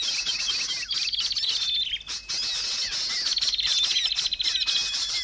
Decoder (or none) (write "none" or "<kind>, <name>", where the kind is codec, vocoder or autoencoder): none